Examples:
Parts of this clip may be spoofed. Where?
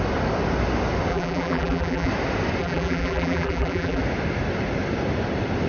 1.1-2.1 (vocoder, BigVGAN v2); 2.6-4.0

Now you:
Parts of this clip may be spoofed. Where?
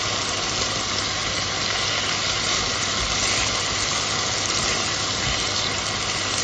none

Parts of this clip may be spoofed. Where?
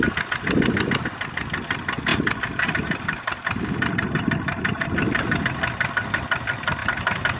2.1-5.4 (vocoder, BigVGAN v2); 6.8-7.4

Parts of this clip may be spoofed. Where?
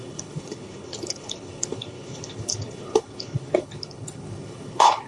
0.0-5.1 (codec, HILCodec)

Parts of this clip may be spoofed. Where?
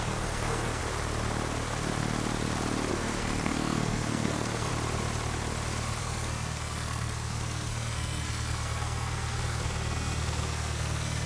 0.0-0.8 (codec, SNAC); 2.9-4.7; 6.0-11.3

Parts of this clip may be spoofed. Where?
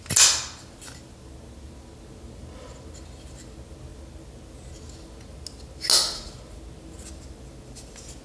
none